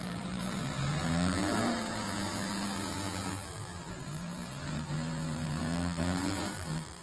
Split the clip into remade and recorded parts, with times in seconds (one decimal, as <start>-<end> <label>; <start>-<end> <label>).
0.0-7.0 remade

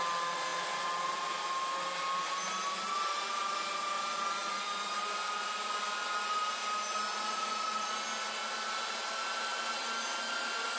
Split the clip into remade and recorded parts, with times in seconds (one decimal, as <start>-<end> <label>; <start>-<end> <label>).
0.0-10.8 recorded

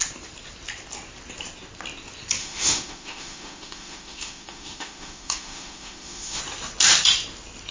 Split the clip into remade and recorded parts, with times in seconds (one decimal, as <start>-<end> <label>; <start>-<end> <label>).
0.0-2.4 recorded; 2.4-6.4 remade; 6.4-7.7 recorded

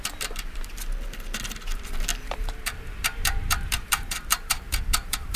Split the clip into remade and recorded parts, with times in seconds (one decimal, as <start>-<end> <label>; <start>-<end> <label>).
0.0-2.1 recorded; 2.1-5.4 remade

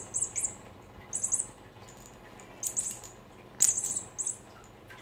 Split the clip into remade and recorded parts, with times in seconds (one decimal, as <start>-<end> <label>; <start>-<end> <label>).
0.0-5.0 recorded

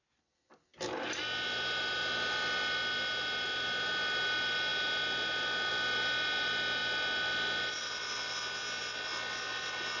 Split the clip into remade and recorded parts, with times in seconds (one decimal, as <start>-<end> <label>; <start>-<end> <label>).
0.0-10.0 recorded

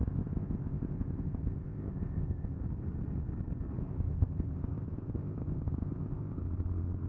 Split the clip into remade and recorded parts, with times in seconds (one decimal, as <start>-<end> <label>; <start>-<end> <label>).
0.0-2.6 remade; 2.6-3.8 recorded; 3.8-6.4 remade; 6.4-7.1 recorded

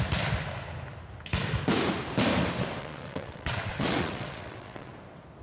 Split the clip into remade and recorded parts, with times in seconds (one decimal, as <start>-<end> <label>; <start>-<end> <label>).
0.0-2.8 recorded; 2.8-4.9 remade; 4.9-5.4 recorded